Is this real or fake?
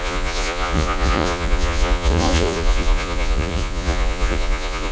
fake